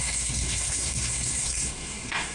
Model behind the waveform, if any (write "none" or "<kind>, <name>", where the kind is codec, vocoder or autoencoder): codec, SNAC